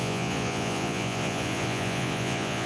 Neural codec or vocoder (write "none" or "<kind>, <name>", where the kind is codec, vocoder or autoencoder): vocoder, Vocos